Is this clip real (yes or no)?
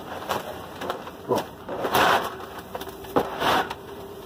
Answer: no